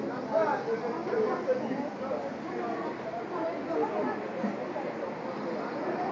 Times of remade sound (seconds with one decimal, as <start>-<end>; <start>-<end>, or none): none